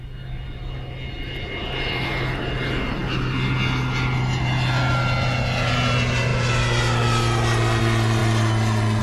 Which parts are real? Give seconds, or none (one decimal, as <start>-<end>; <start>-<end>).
0.0-9.0